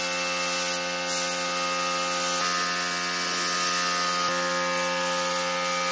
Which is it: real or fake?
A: real